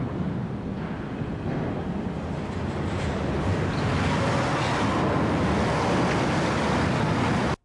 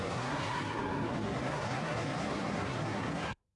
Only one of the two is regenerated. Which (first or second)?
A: second